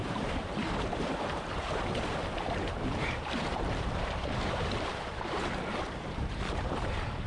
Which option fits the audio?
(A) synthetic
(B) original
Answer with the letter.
A